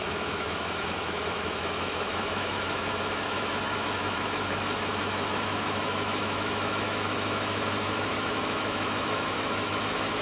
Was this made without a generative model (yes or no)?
no